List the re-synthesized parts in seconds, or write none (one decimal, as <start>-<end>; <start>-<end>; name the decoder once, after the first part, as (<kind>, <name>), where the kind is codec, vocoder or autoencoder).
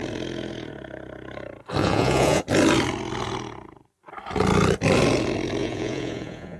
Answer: 1.8-2.4 (vocoder, Vocos); 5.6-6.6